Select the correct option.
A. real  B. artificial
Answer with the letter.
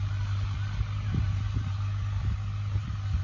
A